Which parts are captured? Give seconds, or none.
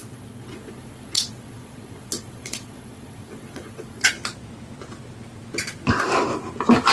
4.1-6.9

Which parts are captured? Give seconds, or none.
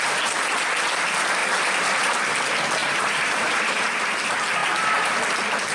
0.0-2.8; 4.0-4.6; 5.2-5.7